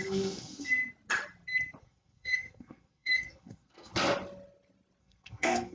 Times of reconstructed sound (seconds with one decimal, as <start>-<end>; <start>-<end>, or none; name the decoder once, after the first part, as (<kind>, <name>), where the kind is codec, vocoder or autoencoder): 0.0-0.8 (codec, SNAC); 1.8-3.9; 5.0-5.7